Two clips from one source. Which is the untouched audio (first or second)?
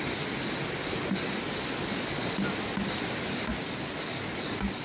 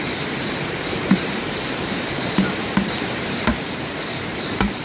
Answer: first